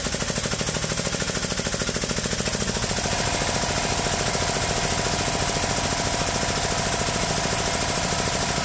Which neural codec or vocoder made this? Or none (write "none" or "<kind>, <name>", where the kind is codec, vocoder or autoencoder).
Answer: none